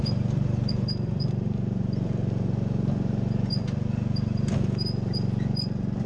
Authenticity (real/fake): real